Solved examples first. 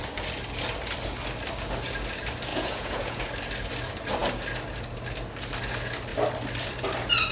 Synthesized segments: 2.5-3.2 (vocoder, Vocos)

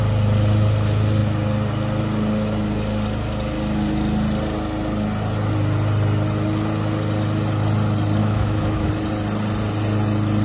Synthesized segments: 8.2-8.9 (autoencoder, DAC-VAE)

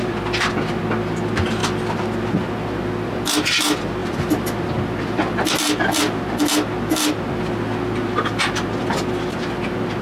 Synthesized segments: none